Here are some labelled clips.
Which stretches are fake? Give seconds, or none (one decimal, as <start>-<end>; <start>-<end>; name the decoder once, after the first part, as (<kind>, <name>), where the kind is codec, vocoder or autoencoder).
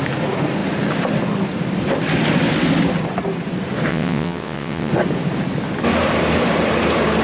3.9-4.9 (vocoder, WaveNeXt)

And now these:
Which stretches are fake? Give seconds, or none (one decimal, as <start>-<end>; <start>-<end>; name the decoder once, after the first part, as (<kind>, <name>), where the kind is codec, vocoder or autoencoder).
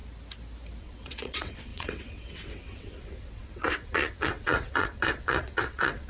0.8-6.1 (vocoder, WaveNeXt)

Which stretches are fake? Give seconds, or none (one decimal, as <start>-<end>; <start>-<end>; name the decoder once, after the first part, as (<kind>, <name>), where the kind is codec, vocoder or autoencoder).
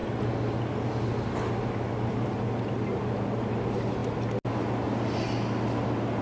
none